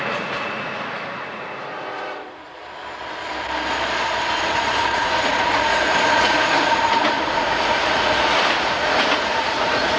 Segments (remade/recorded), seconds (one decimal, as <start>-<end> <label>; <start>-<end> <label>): 0.0-2.6 remade; 2.6-4.4 recorded; 4.4-10.0 remade